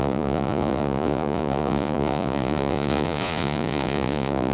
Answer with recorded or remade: remade